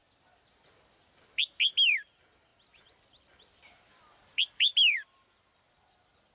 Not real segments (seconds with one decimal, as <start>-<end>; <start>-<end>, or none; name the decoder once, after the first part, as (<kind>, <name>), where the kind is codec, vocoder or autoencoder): 2.5-5.7 (vocoder, BigVGAN v2)